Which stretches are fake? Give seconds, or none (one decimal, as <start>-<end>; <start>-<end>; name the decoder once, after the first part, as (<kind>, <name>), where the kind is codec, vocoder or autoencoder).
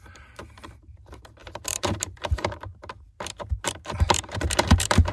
0.0-5.1 (vocoder, BigVGAN v2)